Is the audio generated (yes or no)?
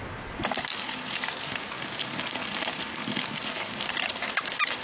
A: no